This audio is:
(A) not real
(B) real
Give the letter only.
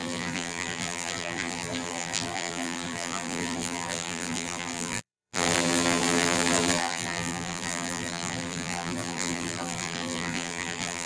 A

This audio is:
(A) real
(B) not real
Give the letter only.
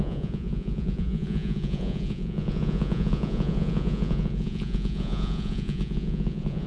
B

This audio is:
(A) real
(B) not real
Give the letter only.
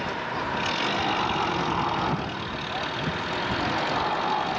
A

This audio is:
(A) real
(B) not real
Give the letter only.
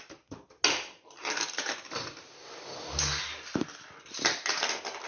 A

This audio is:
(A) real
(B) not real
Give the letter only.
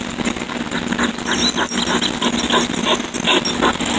A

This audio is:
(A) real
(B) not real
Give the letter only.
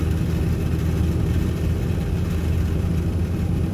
A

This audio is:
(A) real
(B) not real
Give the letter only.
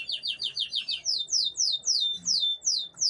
A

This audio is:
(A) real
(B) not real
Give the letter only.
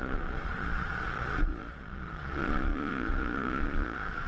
B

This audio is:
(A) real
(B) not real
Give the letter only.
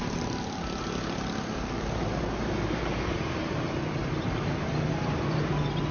B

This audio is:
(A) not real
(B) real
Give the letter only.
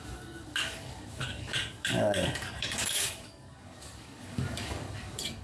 A